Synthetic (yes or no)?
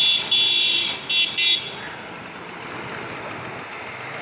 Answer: no